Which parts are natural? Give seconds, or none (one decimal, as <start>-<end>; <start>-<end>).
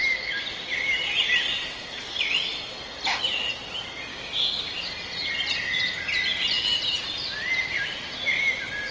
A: 0.0-4.1; 4.9-8.9